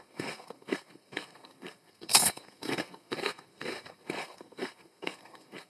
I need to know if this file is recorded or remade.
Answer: remade